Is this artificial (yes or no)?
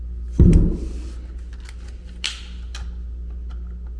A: no